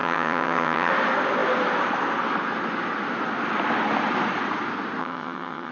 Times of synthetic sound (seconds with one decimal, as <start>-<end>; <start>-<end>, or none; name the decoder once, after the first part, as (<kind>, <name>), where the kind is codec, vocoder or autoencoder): 0.0-0.9 (vocoder, HiFi-GAN); 5.0-5.7